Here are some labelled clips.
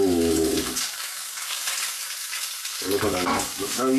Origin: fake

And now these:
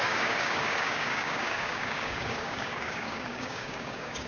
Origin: fake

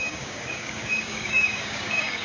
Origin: fake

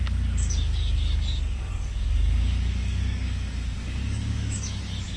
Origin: fake